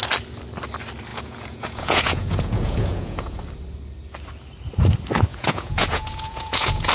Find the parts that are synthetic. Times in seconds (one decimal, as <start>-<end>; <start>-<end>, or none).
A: 1.1-3.4; 5.3-6.9